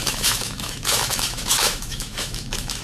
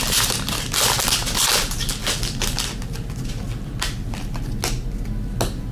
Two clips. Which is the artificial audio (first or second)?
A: first